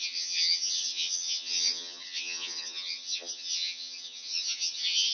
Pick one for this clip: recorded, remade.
remade